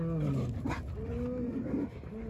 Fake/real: real